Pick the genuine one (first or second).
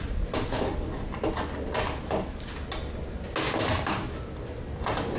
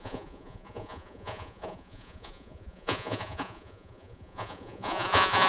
first